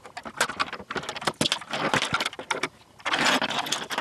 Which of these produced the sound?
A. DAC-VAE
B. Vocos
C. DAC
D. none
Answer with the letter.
D